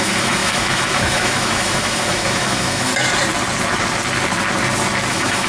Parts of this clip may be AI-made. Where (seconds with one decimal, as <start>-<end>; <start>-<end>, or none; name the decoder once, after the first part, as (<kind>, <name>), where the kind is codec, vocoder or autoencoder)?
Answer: 0.0-2.9 (autoencoder, DAC-VAE); 5.1-5.5